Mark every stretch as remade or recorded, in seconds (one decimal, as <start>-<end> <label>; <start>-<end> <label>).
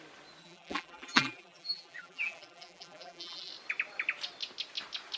0.0-0.4 recorded; 0.4-3.5 remade; 3.5-5.2 recorded